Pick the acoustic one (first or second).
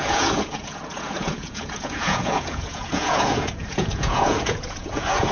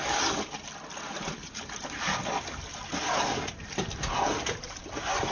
second